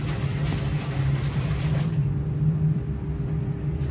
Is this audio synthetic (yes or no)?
yes